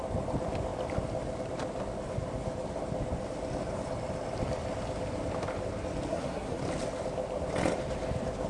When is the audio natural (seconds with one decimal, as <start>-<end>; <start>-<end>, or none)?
0.0-6.1; 6.6-8.5